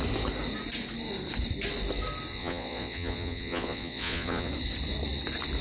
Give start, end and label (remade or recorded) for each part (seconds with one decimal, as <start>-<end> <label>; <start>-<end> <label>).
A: 0.0-2.3 recorded; 2.3-4.5 remade; 4.5-5.6 recorded